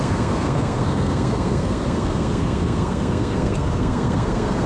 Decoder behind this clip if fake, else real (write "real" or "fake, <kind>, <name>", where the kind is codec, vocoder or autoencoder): fake, codec, SNAC